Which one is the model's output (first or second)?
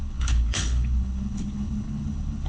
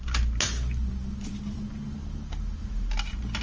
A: first